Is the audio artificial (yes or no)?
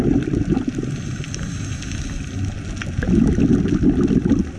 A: no